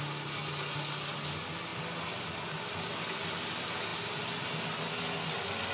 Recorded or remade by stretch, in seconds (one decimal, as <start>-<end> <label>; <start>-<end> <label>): 0.0-5.7 recorded